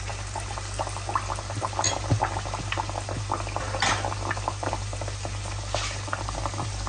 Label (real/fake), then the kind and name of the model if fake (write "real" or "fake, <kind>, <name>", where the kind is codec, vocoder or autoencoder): real